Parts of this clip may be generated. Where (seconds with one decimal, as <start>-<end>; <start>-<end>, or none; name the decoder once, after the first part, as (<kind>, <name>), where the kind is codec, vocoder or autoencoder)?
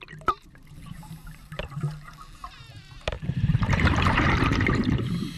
0.0-5.4 (vocoder, BigVGAN v2)